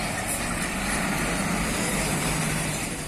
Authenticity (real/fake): fake